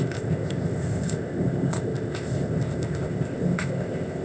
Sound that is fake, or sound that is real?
fake